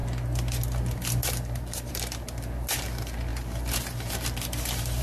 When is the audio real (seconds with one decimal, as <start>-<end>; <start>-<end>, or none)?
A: 0.0-5.0